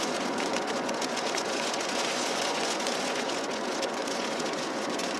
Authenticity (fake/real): fake